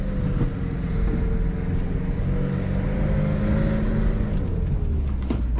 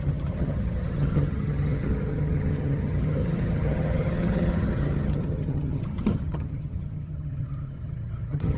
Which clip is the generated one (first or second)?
second